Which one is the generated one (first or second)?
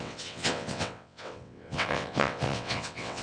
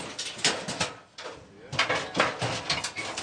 first